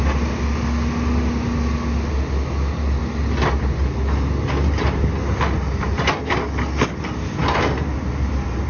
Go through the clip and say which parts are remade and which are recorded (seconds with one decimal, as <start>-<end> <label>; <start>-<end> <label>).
0.0-8.7 recorded